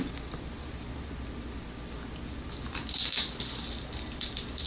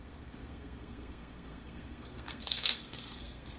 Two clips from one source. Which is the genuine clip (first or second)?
first